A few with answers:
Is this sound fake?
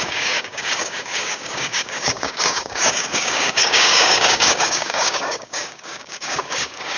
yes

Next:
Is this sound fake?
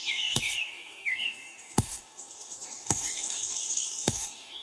yes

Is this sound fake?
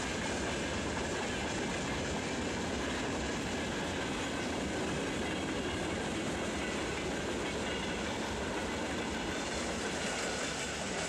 no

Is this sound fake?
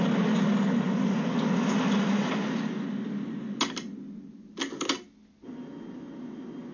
no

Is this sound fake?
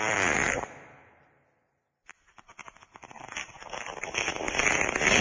no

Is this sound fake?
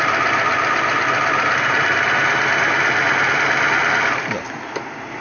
no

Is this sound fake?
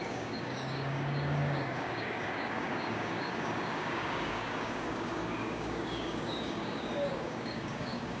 yes